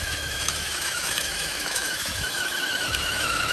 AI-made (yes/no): yes